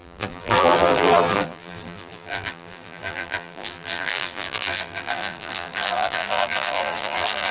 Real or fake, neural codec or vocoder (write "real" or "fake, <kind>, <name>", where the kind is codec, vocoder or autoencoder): fake, vocoder, BigVGAN v2